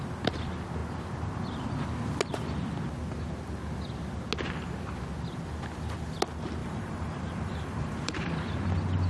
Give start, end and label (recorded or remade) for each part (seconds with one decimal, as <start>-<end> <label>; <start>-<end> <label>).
0.0-6.6 recorded; 6.6-8.3 remade; 8.3-9.1 recorded